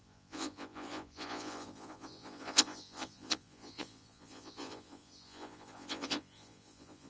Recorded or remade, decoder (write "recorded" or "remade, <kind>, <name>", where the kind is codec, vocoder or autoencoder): remade, vocoder, Vocos